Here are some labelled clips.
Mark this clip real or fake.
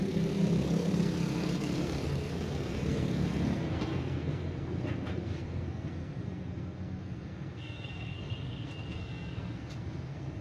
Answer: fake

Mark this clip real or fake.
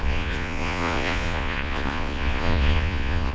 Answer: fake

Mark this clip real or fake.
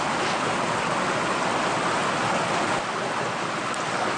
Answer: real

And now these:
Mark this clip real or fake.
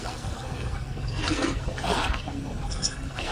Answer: fake